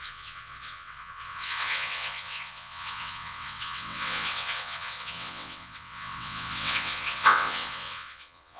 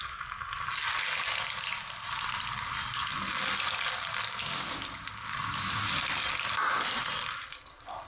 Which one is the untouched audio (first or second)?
second